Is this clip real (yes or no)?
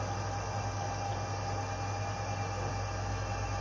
yes